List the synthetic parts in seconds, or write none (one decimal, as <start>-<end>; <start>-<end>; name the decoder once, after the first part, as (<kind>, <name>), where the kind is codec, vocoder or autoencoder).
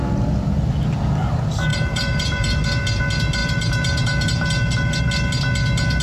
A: 1.7-2.6 (vocoder, BigVGAN v2); 3.4-5.0